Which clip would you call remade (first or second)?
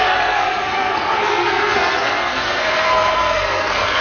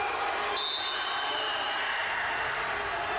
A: first